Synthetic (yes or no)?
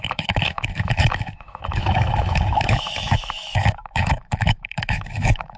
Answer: yes